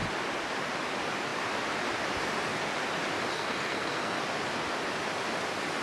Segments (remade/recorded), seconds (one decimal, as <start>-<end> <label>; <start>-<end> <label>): 0.0-3.3 recorded; 3.3-4.2 remade; 4.2-5.8 recorded